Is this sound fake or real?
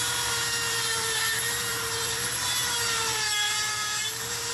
fake